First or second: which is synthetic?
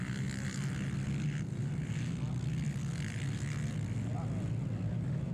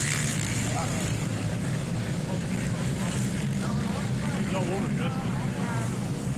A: second